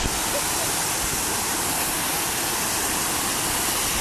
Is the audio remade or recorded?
recorded